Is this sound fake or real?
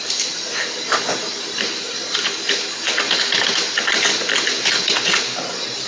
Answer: real